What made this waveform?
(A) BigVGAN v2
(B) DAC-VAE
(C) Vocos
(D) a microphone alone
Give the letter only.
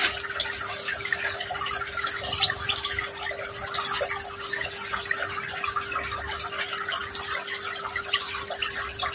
D